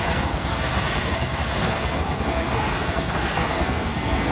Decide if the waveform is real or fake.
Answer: fake